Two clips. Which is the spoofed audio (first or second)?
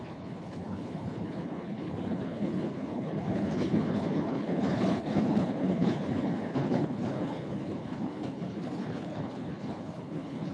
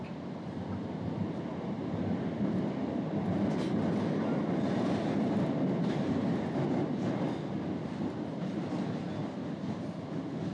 first